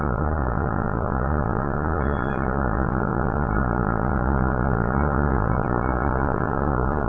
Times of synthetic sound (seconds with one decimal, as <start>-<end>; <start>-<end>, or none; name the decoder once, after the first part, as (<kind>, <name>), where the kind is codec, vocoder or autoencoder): 0.0-7.1 (vocoder, Vocos)